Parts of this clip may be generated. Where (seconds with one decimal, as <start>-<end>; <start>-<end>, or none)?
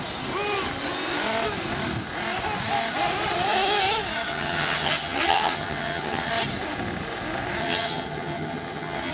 4.3-6.3; 7.6-9.1